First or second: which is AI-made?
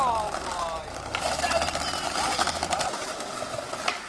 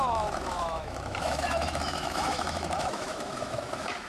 second